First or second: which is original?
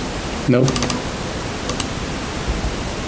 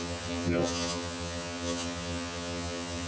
first